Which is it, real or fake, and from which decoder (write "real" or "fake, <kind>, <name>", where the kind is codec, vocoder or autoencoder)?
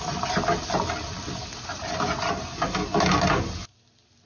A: real